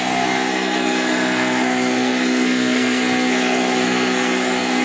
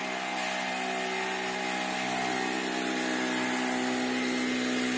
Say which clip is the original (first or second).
second